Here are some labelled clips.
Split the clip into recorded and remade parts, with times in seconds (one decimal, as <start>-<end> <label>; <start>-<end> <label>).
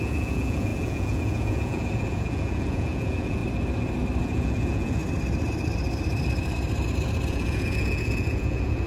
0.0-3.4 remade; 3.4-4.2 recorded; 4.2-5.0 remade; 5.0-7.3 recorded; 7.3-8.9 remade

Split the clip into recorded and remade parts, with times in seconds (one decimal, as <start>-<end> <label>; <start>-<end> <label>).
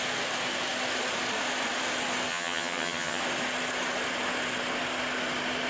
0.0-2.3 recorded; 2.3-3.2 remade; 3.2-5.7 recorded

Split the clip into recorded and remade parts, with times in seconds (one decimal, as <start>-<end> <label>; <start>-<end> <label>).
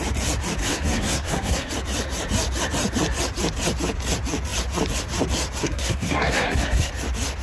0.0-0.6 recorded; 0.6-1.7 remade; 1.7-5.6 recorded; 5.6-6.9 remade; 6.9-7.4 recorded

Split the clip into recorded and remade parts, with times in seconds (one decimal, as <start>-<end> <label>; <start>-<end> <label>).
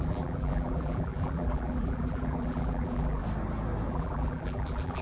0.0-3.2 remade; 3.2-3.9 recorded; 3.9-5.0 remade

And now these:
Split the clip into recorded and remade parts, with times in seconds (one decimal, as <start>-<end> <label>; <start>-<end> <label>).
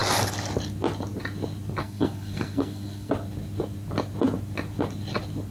0.0-1.8 recorded; 1.8-3.1 remade; 3.1-5.5 recorded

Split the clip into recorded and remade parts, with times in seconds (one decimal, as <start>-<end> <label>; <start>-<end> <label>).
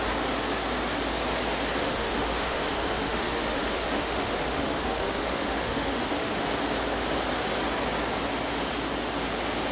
0.0-1.8 recorded; 1.8-6.5 remade; 6.5-9.7 recorded